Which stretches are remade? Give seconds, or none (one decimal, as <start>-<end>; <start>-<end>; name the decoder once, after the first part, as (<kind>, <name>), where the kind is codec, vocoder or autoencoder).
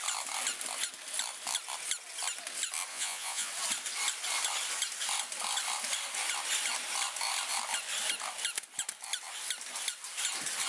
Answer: 2.9-3.5 (vocoder, Vocos)